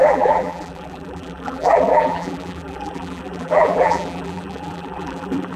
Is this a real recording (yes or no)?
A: no